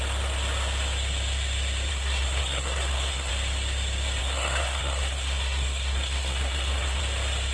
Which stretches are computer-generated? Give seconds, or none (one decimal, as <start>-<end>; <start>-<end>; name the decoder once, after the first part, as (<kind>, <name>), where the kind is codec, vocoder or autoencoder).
1.9-3.3 (codec, SNAC); 4.2-7.0